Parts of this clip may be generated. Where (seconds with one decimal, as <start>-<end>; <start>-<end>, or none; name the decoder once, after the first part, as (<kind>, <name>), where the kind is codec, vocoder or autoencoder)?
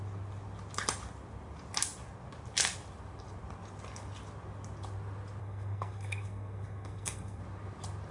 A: 5.4-7.4 (codec, SNAC)